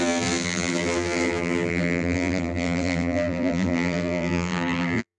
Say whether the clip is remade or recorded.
remade